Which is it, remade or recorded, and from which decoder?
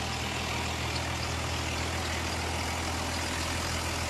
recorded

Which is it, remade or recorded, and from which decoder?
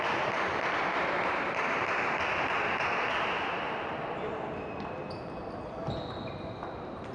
recorded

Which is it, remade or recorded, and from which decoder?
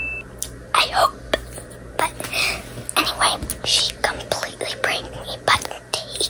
recorded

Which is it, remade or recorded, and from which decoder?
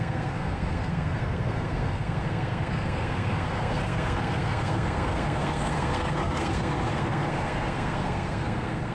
remade, codec, SNAC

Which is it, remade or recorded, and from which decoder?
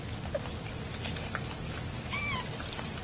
recorded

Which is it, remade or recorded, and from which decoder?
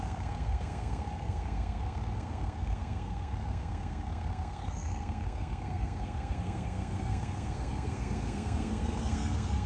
remade, codec, SNAC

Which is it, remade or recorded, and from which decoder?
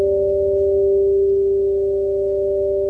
recorded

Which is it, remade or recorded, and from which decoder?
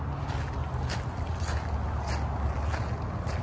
recorded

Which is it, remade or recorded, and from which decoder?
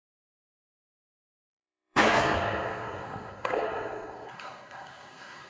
remade, codec, SNAC